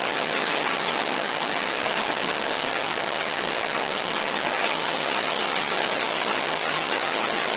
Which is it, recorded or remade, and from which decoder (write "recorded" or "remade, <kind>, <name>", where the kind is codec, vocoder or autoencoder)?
remade, vocoder, HiFi-GAN